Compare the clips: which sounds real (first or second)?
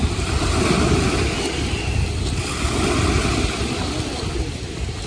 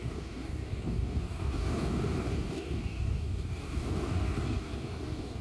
first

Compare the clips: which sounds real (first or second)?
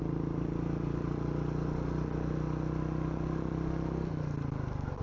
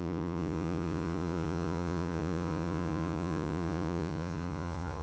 first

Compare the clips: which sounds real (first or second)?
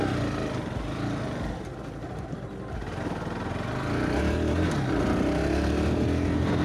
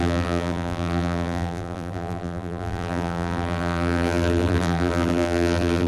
first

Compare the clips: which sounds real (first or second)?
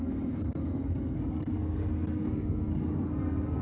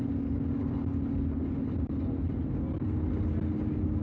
second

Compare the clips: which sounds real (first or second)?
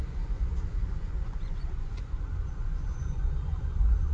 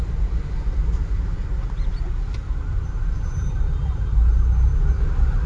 second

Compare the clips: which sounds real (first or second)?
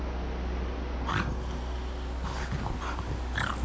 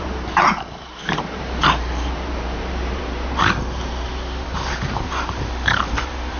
first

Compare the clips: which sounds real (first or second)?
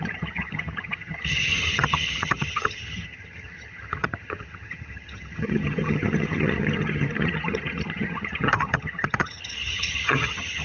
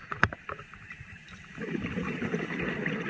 second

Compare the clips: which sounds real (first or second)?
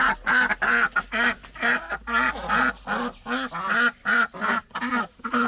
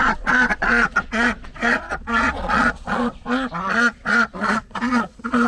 first